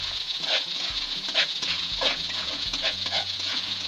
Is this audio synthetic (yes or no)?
yes